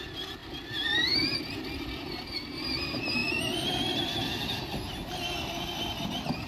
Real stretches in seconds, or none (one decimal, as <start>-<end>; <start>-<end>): 0.0-6.5